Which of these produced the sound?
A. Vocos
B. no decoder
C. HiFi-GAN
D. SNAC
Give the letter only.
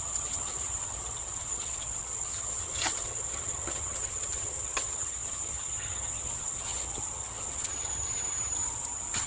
C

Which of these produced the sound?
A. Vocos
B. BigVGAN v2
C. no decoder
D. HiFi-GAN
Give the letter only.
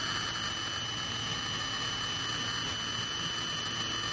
C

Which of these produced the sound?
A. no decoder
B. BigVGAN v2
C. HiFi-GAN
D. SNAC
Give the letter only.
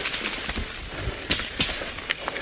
A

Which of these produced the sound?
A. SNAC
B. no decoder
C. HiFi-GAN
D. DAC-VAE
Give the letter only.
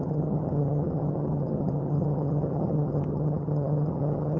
C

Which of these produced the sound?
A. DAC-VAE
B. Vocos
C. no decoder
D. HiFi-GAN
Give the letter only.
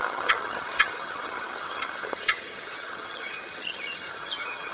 D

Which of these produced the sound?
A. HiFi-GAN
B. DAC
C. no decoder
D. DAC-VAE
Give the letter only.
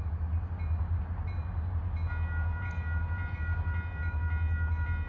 C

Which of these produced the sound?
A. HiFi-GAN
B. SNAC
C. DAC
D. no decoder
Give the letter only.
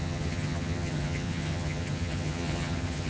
A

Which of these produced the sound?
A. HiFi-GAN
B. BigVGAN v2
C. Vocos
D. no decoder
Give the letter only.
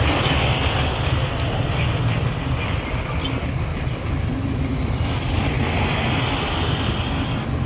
D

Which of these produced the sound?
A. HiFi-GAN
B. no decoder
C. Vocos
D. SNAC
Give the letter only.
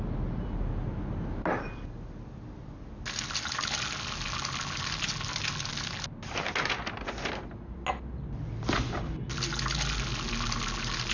B